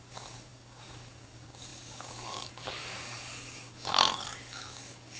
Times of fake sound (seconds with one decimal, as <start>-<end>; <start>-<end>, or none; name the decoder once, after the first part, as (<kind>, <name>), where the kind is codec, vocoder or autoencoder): 0.0-5.2 (codec, DAC)